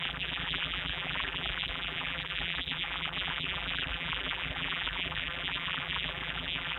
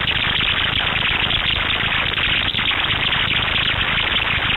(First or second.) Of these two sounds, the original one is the second